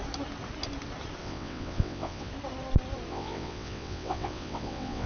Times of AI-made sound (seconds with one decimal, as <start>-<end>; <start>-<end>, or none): 1.2-2.3; 3.1-5.1